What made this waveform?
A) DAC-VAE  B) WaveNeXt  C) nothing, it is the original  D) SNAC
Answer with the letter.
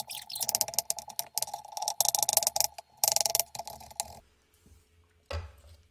C